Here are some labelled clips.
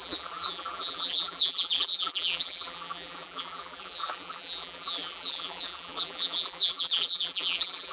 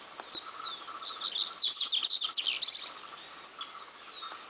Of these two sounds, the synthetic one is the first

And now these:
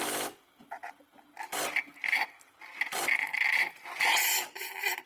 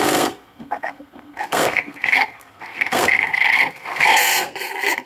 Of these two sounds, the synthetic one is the second